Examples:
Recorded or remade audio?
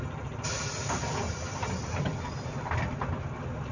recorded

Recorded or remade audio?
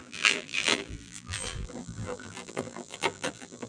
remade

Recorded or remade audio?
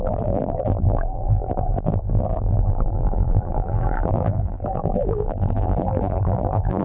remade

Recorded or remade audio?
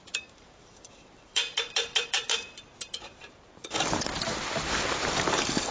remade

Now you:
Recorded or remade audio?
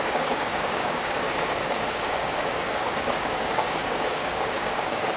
remade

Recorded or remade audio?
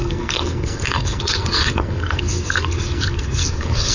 remade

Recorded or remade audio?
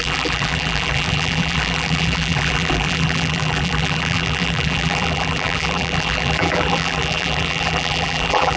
remade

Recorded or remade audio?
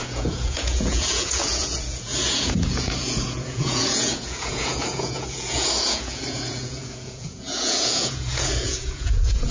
remade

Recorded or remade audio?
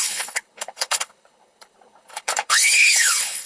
remade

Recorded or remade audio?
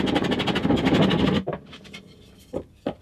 recorded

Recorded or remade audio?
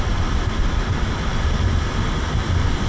recorded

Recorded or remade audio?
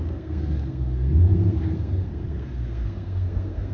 remade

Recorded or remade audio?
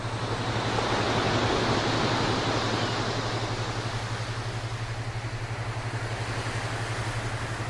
recorded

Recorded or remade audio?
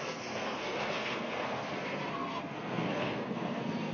remade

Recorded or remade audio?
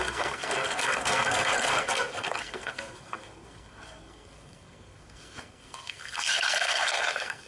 remade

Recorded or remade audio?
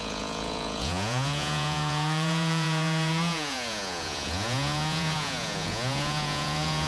remade